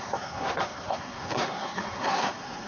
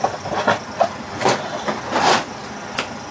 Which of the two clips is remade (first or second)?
first